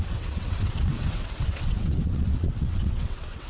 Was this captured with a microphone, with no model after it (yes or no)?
no